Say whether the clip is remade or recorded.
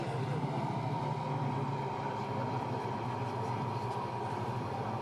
remade